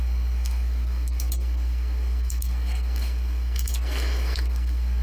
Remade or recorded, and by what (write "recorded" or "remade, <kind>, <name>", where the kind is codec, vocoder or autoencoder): remade, codec, SNAC